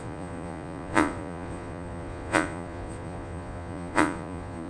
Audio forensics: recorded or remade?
remade